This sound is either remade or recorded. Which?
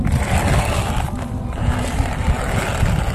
recorded